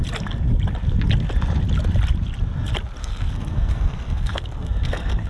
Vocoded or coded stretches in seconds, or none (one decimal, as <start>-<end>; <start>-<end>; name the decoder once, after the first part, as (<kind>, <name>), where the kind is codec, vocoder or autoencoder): 3.0-5.3 (codec, SNAC)